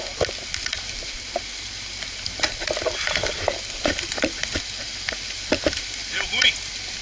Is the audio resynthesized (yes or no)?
no